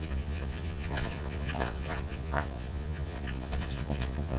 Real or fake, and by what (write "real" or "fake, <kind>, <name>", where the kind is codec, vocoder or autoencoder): fake, vocoder, Vocos